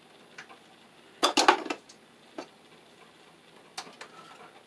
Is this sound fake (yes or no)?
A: no